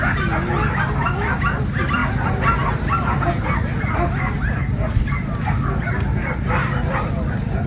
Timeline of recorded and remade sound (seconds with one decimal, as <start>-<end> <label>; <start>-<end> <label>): 0.0-7.7 recorded